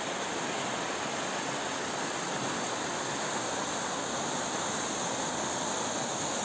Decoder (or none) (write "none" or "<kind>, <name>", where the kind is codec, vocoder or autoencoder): none